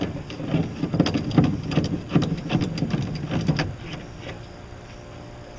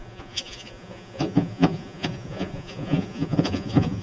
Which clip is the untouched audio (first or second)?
first